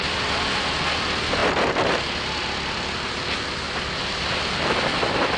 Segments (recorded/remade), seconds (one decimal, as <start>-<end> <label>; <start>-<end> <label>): 0.0-5.4 recorded